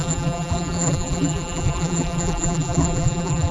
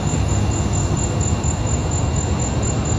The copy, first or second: first